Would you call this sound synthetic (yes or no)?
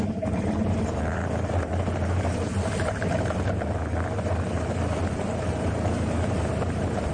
yes